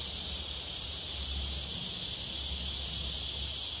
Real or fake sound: real